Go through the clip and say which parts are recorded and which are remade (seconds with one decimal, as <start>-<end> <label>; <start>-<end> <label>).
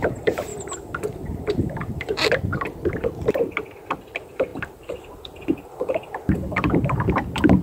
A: 0.0-0.5 remade; 0.5-1.4 recorded; 1.4-2.5 remade; 2.5-4.0 recorded; 4.0-7.6 remade